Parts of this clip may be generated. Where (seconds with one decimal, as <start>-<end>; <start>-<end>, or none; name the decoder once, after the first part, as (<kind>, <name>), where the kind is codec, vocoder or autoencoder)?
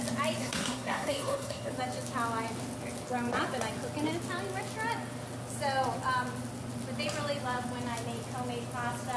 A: 0.4-1.7 (codec, SNAC)